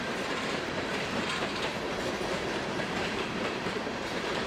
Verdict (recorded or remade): remade